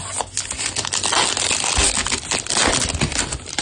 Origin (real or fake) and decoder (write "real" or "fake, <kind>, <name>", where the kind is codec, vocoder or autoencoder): real